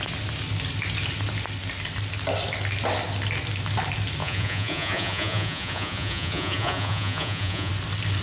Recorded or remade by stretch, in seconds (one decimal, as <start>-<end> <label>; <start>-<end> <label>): 0.0-4.2 recorded; 4.2-7.7 remade; 7.7-8.2 recorded